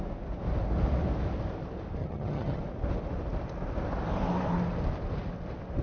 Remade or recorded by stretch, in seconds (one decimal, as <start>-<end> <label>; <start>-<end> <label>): 0.0-2.0 recorded; 2.0-2.6 remade; 2.6-5.8 recorded